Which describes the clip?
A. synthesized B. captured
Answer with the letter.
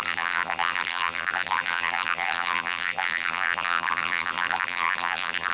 A